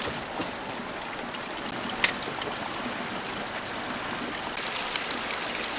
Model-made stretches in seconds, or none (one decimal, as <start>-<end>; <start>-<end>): none